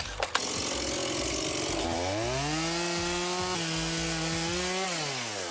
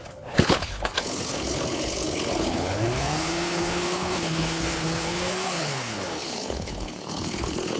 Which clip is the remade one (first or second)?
second